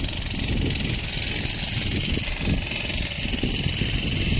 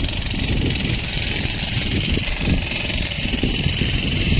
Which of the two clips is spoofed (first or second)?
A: second